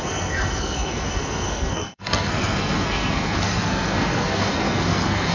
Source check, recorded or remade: remade